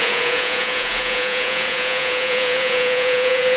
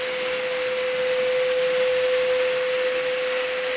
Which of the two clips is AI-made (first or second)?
first